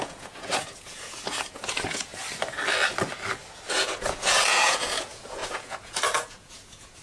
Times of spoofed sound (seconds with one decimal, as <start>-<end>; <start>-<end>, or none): 0.0-2.1; 3.7-7.0